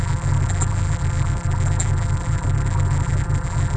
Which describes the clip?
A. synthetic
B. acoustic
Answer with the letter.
A